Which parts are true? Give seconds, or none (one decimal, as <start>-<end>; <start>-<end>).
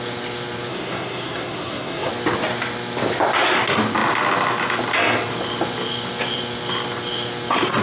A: 0.0-0.7; 2.1-7.8